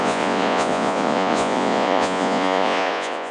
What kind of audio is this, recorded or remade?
remade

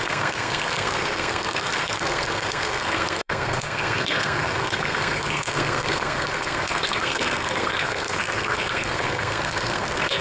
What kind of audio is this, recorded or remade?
remade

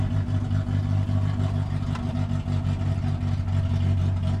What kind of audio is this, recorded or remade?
recorded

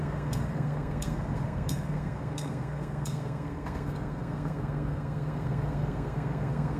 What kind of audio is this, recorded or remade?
remade